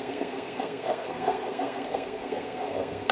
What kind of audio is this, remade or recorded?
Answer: remade